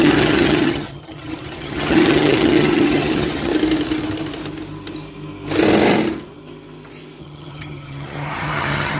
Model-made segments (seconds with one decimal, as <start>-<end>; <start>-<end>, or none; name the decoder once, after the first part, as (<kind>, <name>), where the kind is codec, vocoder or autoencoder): 0.0-3.5 (vocoder, HiFi-GAN); 7.2-9.0